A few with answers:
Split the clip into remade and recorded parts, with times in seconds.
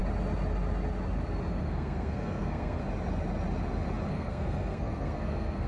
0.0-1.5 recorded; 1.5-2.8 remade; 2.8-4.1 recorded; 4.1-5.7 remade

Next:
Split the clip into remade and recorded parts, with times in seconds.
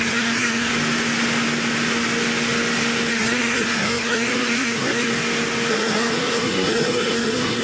0.0-0.7 remade; 0.7-3.1 recorded; 3.1-5.1 remade; 5.1-5.7 recorded; 5.7-7.6 remade